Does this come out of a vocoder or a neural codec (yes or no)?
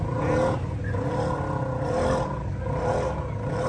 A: no